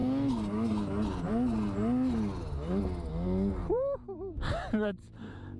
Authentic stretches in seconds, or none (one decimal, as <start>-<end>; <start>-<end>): 0.0-3.6